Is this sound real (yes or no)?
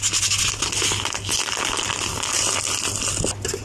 yes